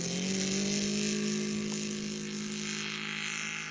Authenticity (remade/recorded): recorded